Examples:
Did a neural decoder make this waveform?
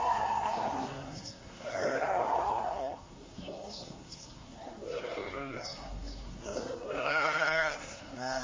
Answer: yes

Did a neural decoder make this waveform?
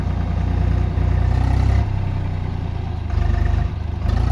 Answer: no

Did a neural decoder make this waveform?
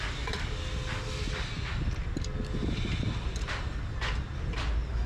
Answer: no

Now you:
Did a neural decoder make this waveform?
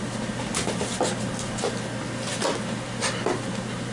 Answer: no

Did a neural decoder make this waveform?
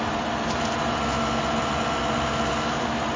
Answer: no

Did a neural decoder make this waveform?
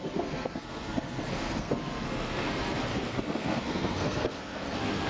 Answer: yes